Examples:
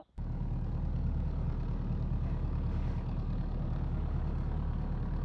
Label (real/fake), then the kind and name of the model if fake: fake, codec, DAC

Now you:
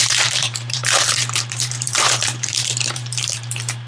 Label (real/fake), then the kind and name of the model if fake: fake, vocoder, BigVGAN v2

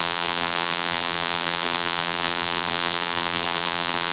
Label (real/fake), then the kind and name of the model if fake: fake, vocoder, BigVGAN v2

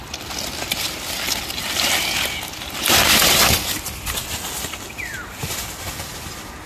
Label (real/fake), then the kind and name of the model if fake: real